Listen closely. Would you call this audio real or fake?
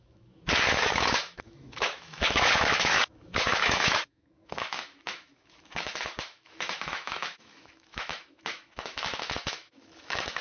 fake